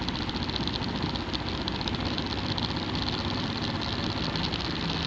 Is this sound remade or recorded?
recorded